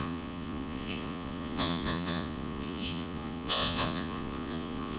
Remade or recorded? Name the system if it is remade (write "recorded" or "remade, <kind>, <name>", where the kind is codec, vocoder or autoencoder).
remade, vocoder, Vocos